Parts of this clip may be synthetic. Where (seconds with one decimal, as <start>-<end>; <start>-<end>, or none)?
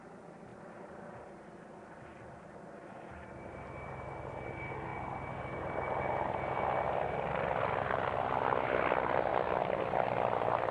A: none